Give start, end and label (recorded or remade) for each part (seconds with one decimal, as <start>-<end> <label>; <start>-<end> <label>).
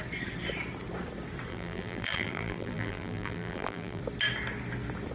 0.0-1.5 recorded; 1.5-4.0 remade; 4.0-5.1 recorded